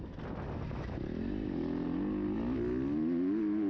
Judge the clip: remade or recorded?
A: recorded